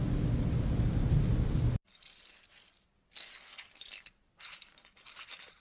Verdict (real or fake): real